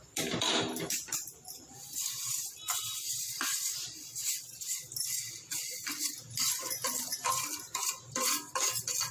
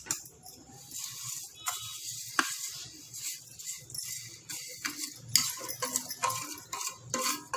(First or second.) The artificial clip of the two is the first